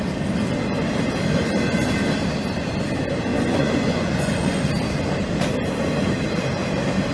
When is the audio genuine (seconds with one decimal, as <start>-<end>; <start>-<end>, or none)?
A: 0.0-3.3; 4.7-7.1